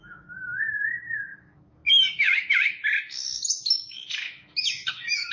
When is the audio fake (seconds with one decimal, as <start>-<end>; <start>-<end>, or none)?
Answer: 0.0-5.3